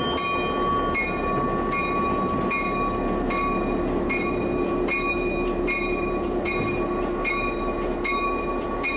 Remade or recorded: recorded